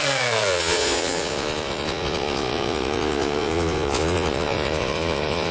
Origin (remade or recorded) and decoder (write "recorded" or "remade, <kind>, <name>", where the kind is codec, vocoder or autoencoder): remade, vocoder, Vocos